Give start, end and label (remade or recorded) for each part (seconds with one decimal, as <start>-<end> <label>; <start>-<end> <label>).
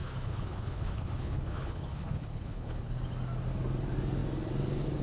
0.0-3.0 remade; 3.0-5.0 recorded